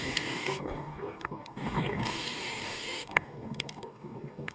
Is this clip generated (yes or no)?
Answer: yes